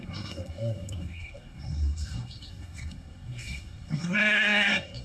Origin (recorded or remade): remade